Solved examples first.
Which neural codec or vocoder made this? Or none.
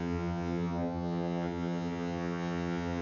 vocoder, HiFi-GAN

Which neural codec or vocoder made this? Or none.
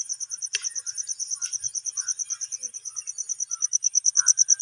none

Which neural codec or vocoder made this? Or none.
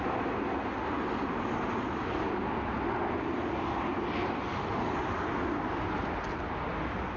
none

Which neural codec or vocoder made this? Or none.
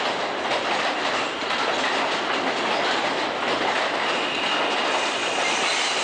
none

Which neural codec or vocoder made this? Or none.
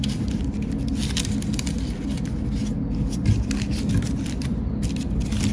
none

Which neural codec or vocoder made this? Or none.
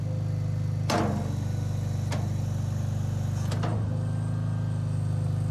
none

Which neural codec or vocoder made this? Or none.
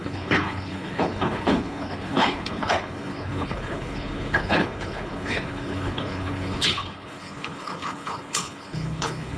codec, HILCodec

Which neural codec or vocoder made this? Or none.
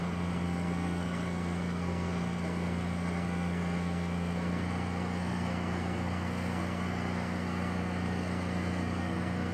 codec, SNAC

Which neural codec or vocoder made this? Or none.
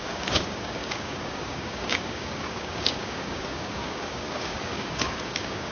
codec, DAC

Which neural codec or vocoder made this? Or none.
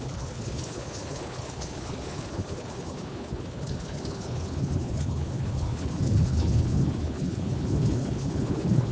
codec, HILCodec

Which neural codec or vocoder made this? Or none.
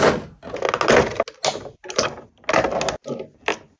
none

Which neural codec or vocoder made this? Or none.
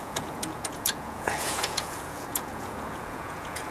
vocoder, Vocos